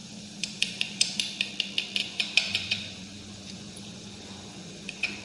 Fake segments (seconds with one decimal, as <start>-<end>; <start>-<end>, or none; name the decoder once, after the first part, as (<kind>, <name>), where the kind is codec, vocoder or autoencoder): 0.0-1.2 (vocoder, Vocos); 2.0-5.2